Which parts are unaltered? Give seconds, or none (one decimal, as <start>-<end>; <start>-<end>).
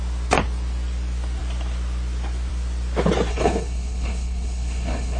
0.0-3.3